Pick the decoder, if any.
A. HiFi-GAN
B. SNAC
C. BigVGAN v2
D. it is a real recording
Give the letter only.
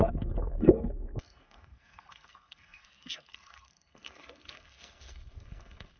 B